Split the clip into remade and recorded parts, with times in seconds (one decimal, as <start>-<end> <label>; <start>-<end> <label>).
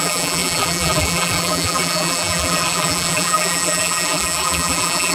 0.0-5.1 remade